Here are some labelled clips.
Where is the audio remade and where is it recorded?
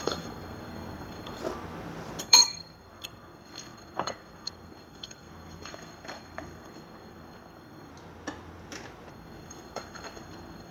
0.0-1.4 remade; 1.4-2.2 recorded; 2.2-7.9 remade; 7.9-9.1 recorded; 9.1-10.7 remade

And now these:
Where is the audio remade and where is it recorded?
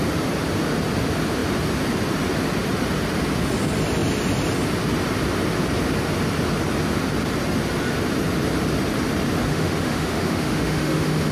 0.0-9.5 recorded; 9.5-11.3 remade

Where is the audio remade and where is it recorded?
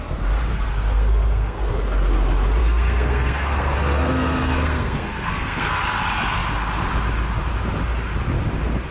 0.0-0.5 recorded; 0.5-1.7 remade; 1.7-2.6 recorded; 2.6-5.8 remade; 5.8-8.9 recorded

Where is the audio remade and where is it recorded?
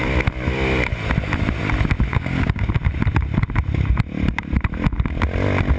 0.0-2.1 recorded; 2.1-2.7 remade; 2.7-5.8 recorded